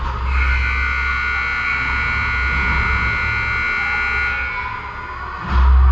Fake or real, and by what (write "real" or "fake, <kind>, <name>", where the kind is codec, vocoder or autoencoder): real